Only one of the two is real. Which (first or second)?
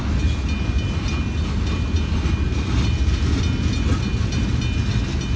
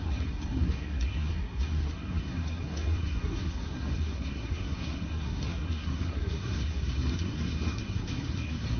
first